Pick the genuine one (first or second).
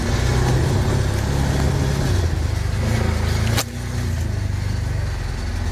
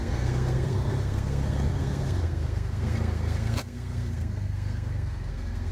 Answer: first